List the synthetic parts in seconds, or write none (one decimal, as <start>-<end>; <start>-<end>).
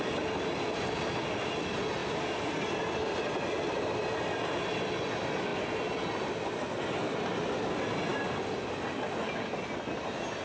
none